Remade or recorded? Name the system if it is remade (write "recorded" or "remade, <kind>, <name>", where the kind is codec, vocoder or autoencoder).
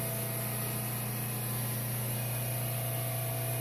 recorded